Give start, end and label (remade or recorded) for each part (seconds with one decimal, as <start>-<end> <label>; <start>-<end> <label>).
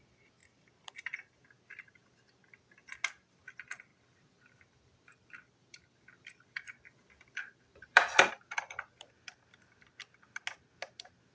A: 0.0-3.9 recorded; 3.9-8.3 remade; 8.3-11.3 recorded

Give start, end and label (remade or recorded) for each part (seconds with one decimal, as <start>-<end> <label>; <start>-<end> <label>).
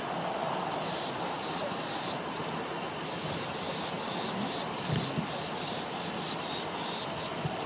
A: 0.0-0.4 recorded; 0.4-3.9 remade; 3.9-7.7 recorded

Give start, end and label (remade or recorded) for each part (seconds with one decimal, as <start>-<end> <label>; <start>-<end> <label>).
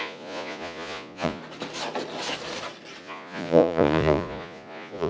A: 0.0-1.4 remade; 1.4-3.0 recorded; 3.0-5.1 remade